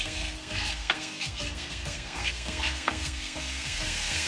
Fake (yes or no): yes